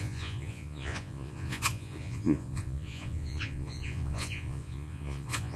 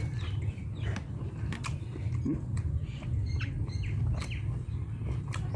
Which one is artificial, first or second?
first